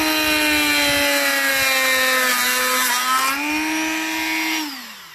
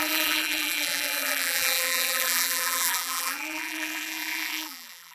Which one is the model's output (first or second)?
second